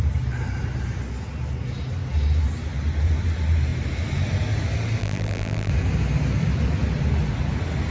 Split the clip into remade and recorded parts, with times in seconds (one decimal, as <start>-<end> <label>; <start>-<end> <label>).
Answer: 0.0-5.0 recorded; 5.0-5.7 remade; 5.7-7.9 recorded